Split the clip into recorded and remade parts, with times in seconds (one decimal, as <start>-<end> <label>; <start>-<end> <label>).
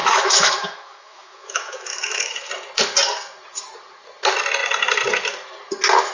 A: 0.0-2.5 remade; 2.5-6.1 recorded